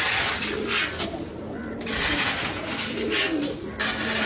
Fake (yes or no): no